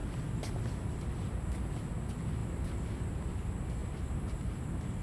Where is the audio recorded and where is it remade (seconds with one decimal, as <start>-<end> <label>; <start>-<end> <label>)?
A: 0.0-2.4 recorded; 2.4-3.1 remade; 3.1-3.8 recorded; 3.8-5.0 remade